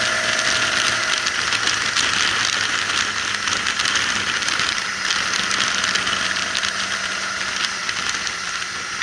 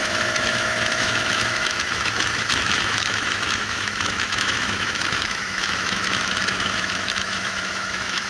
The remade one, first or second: second